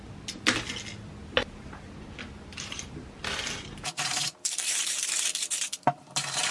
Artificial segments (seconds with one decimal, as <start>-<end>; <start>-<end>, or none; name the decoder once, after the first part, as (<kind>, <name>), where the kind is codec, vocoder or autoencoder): 1.2-1.9 (vocoder, BigVGAN v2); 2.5-6.5